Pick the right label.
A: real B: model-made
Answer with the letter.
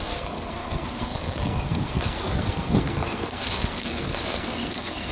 B